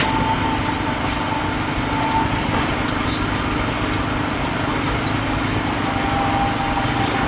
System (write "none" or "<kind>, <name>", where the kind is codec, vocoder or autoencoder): none